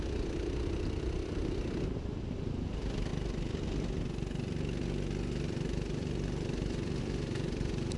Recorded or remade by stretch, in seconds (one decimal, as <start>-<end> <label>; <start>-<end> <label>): 0.0-3.1 remade; 3.1-7.0 recorded; 7.0-8.0 remade